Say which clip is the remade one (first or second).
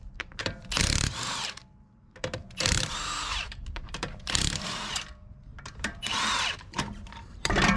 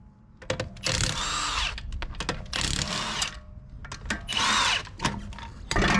first